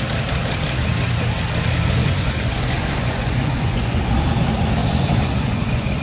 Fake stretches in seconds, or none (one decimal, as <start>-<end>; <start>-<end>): 2.0-4.1; 4.8-6.0